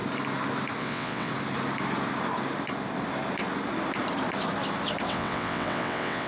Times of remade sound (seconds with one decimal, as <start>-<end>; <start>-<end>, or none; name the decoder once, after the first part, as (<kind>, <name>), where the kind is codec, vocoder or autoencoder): 0.8-1.3 (vocoder, WaveNeXt); 5.1-6.3